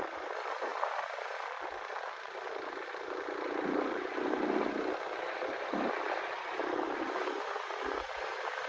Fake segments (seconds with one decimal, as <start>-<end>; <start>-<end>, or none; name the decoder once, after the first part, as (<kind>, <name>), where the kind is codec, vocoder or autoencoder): none